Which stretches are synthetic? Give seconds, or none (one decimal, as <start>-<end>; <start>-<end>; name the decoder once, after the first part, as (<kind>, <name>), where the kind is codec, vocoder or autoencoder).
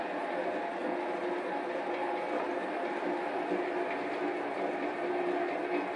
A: none